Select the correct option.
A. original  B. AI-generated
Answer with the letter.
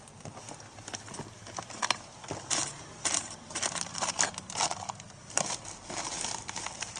A